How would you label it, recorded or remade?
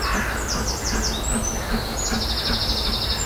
recorded